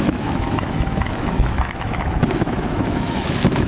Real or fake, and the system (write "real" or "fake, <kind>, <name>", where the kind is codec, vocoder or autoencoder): fake, autoencoder, DAC-VAE